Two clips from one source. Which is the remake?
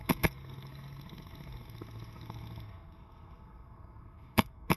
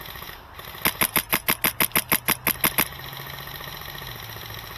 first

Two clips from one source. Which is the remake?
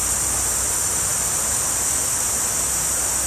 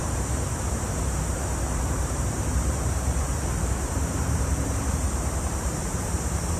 second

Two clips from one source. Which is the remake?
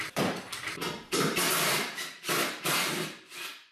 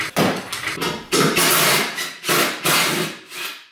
first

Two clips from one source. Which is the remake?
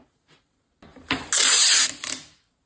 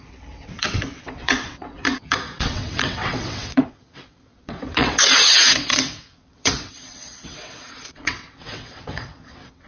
second